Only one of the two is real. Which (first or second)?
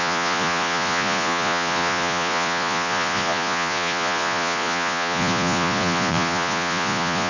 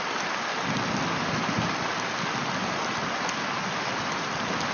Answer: second